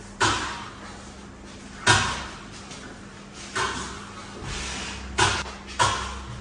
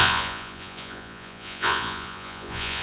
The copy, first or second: second